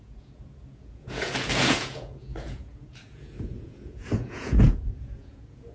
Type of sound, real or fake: fake